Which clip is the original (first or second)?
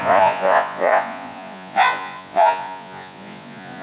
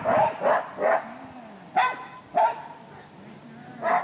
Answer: second